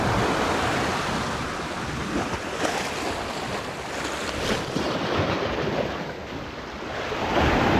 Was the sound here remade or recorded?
recorded